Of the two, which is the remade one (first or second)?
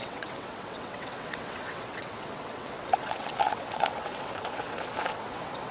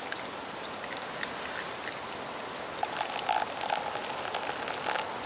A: first